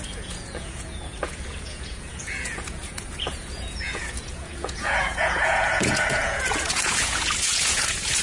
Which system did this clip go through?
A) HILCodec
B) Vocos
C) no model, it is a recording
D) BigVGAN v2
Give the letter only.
B